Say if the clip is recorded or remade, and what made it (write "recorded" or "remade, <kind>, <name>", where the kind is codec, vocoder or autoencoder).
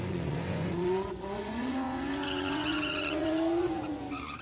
remade, vocoder, Vocos